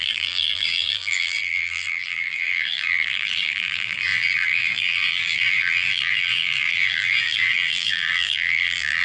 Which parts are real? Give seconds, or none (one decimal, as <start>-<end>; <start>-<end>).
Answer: none